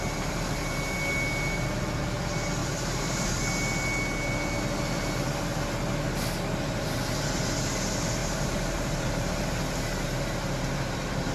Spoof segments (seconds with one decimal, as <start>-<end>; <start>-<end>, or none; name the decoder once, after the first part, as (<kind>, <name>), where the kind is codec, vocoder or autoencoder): 2.6-3.4 (vocoder, BigVGAN v2); 8.2-9.4